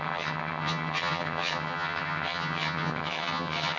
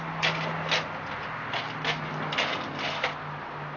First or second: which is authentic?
second